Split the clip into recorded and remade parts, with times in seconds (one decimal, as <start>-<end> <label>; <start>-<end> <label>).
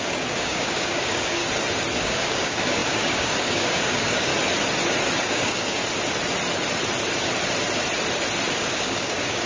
0.0-1.4 remade; 1.4-2.0 recorded; 2.0-4.3 remade; 4.3-5.3 recorded; 5.3-5.8 remade; 5.8-8.5 recorded; 8.5-9.5 remade